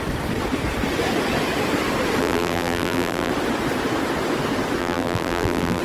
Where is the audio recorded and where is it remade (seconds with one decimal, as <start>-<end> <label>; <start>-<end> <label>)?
0.0-2.2 recorded; 2.2-3.3 remade; 3.3-4.8 recorded; 4.8-5.8 remade